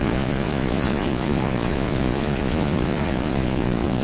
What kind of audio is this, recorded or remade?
remade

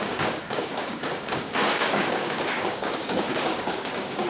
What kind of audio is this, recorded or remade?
remade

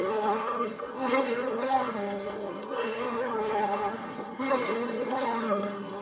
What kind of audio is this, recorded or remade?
remade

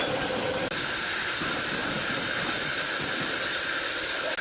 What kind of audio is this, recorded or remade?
recorded